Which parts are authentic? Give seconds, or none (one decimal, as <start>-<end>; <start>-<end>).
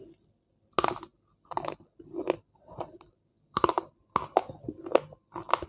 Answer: 0.0-5.7